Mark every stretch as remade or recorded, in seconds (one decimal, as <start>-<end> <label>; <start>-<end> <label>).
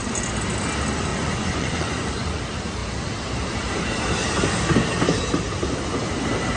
0.0-1.1 recorded; 1.1-2.4 remade; 2.4-6.6 recorded